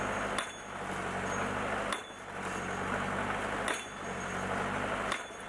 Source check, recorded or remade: recorded